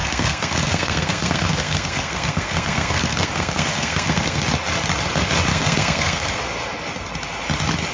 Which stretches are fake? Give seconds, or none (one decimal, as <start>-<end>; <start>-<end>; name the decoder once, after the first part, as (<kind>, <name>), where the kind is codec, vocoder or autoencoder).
0.0-4.4 (codec, SNAC); 5.5-6.4